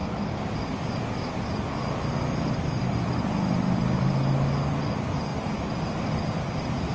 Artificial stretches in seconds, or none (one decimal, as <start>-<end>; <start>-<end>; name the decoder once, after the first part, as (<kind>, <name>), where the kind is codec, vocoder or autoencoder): none